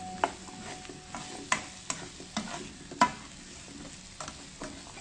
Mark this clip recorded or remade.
recorded